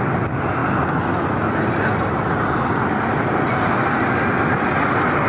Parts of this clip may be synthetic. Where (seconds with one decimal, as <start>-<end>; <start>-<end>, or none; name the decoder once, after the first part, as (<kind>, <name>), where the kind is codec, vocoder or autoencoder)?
none